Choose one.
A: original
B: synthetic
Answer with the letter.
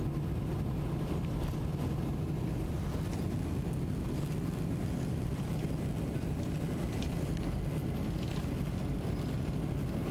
A